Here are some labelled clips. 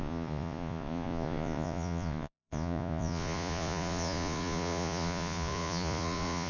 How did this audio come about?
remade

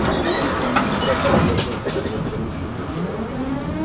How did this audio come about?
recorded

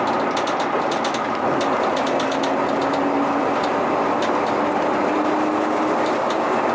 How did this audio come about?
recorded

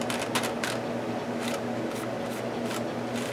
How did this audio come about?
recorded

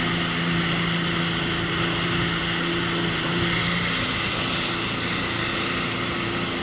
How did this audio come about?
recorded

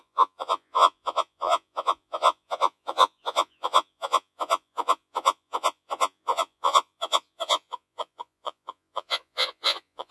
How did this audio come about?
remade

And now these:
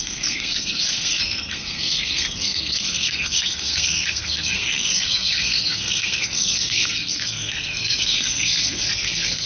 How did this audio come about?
remade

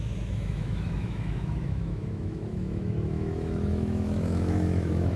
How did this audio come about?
remade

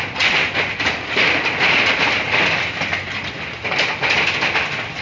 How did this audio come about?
recorded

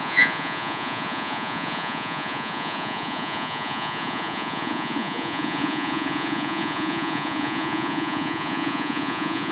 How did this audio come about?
remade